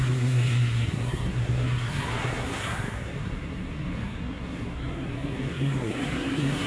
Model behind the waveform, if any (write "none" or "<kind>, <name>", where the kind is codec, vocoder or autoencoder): codec, SNAC